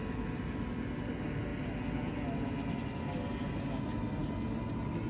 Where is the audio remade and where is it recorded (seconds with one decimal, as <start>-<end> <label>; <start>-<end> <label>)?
0.0-5.1 recorded